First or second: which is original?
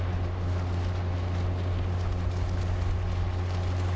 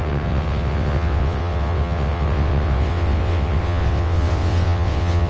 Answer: first